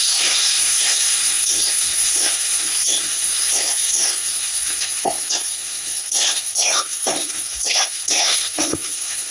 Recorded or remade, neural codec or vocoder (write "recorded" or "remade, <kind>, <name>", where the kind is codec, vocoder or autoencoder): remade, codec, SNAC